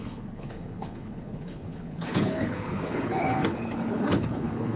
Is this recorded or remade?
remade